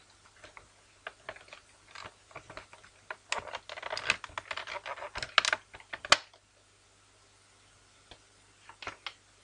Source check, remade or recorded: recorded